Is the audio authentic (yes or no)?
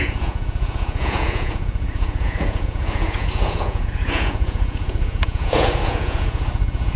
no